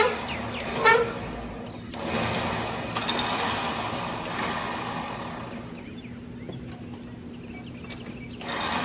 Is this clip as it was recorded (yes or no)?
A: yes